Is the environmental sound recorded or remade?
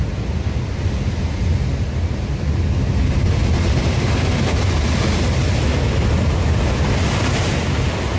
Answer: recorded